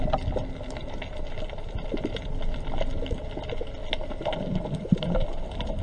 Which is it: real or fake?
real